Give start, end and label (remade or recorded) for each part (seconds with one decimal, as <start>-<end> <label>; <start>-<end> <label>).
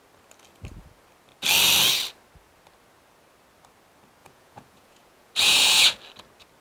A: 0.0-4.2 recorded; 4.2-6.0 remade; 6.0-6.6 recorded